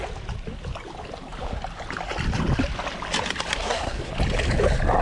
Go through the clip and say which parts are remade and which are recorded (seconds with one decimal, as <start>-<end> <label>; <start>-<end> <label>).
0.0-3.5 recorded; 3.5-4.1 remade; 4.1-5.0 recorded